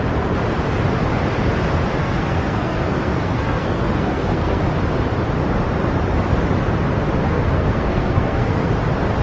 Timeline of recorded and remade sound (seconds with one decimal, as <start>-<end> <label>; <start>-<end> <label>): 0.0-2.0 recorded; 2.0-4.6 remade; 4.6-7.2 recorded; 7.2-8.7 remade; 8.7-9.2 recorded